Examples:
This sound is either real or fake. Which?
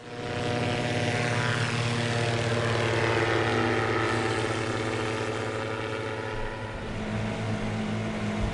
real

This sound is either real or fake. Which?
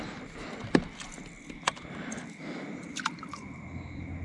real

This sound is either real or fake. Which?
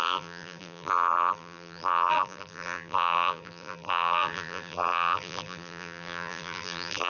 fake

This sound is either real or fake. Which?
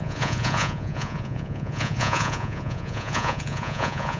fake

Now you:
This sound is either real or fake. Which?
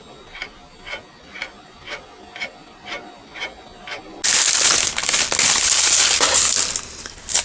real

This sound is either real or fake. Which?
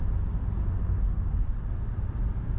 real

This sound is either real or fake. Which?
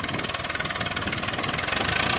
real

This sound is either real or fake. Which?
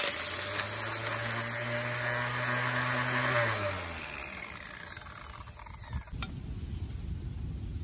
real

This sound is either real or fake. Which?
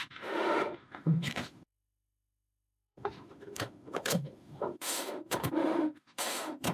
fake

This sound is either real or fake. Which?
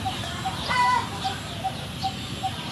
fake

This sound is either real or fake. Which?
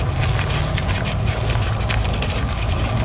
real